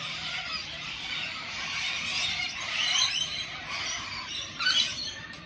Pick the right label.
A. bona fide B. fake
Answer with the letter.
B